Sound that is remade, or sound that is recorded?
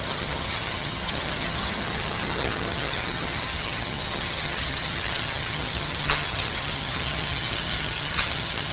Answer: remade